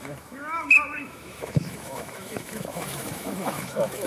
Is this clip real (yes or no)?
no